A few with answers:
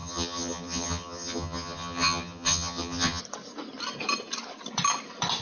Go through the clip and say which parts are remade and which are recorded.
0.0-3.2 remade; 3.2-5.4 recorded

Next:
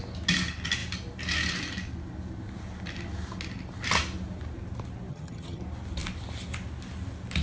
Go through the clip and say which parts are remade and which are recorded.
0.0-5.1 recorded; 5.1-5.6 remade; 5.6-7.4 recorded

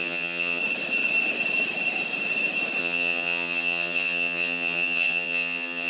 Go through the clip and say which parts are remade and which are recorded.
0.0-0.6 remade; 0.6-2.8 recorded; 2.8-5.9 remade

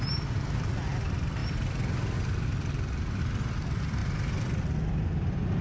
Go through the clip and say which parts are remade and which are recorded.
0.0-5.6 recorded

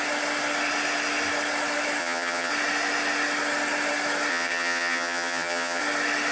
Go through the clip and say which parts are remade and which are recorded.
0.0-2.0 recorded; 2.0-2.5 remade; 2.5-4.3 recorded; 4.3-5.8 remade; 5.8-6.3 recorded

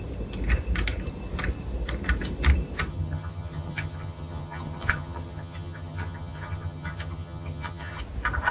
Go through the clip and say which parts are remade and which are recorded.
0.0-2.9 recorded; 2.9-8.0 remade; 8.0-8.5 recorded